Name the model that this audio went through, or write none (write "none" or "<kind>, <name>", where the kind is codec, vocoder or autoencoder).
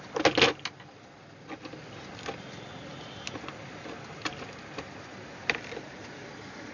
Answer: none